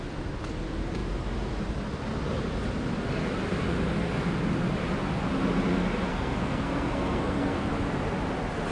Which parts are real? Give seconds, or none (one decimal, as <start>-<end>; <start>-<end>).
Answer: 0.0-6.1; 7.7-8.7